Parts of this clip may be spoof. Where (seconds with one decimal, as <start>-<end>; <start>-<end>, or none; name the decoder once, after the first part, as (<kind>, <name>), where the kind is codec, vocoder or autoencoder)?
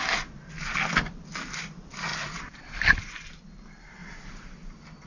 2.1-2.7 (vocoder, BigVGAN v2); 4.0-5.1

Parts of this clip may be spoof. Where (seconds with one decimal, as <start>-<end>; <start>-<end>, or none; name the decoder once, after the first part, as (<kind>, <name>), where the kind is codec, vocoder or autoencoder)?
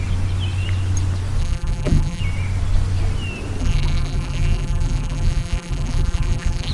1.4-2.2 (vocoder, BigVGAN v2); 3.6-6.7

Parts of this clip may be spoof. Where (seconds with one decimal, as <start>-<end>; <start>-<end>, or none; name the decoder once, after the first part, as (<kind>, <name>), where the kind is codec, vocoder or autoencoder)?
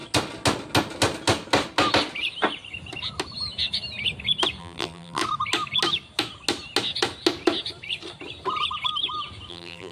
4.6-5.2 (vocoder, BigVGAN v2); 9.5-9.9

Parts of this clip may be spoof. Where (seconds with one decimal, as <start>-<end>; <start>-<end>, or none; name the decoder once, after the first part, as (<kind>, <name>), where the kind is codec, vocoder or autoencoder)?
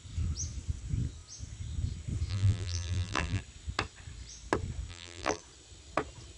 2.3-3.4 (vocoder, BigVGAN v2); 4.9-5.4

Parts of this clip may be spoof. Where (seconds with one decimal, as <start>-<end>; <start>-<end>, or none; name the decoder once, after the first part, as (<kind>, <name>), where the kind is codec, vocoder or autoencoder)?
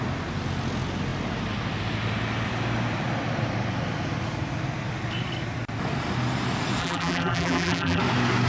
6.8-8.0 (vocoder, BigVGAN v2)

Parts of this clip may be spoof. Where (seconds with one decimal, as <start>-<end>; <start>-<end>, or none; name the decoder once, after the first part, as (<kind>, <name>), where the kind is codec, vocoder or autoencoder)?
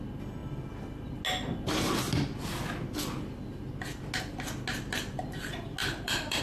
5.8-6.4 (vocoder, BigVGAN v2)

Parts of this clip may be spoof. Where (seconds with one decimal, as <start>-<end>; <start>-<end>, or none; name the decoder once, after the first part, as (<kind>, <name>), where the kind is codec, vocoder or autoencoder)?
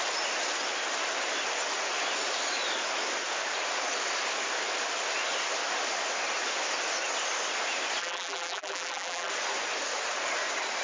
8.0-9.3 (vocoder, BigVGAN v2)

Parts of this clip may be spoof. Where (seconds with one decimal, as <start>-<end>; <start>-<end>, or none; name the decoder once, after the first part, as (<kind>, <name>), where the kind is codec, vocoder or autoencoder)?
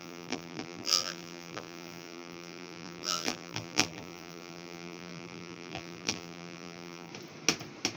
0.0-7.1 (vocoder, BigVGAN v2)